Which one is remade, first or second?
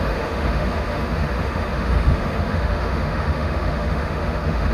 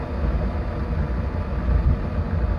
first